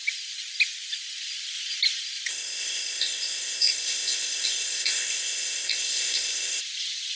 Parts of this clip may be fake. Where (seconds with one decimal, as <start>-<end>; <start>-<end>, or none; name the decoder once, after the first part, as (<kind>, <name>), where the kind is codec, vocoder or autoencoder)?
2.3-6.6 (codec, ZipCodec)